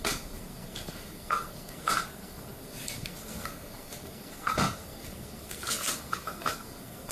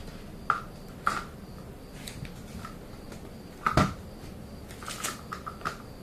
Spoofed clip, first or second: first